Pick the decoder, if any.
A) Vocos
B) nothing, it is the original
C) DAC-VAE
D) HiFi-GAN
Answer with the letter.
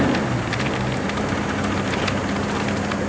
B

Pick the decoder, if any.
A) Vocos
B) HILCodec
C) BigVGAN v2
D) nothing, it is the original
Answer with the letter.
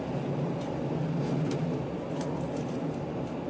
D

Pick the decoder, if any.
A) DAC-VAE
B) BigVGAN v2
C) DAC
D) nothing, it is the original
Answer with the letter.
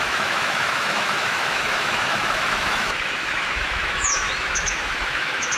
A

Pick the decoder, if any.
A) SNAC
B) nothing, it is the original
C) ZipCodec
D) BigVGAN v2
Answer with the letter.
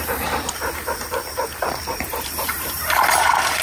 D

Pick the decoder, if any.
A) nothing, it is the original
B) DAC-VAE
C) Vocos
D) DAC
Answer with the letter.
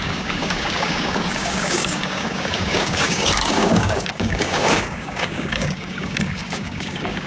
D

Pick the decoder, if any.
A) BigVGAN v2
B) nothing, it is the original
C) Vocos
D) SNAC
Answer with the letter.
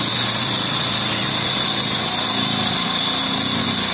B